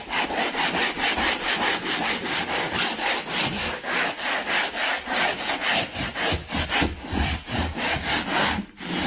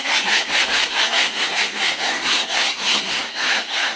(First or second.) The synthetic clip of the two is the second